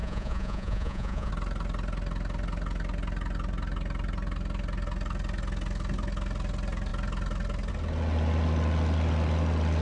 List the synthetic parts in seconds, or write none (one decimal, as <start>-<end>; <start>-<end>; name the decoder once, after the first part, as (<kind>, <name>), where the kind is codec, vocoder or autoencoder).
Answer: 0.0-1.3 (vocoder, Vocos)